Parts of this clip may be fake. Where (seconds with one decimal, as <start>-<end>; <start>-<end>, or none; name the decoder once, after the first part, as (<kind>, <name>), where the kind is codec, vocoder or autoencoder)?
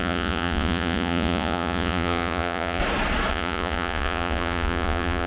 0.0-2.8 (vocoder, Vocos); 3.3-5.3